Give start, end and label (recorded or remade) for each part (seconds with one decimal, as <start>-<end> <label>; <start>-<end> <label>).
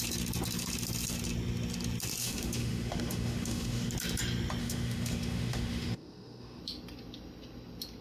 0.0-2.2 recorded; 2.2-3.9 remade; 3.9-4.6 recorded; 4.6-6.6 remade; 6.6-8.0 recorded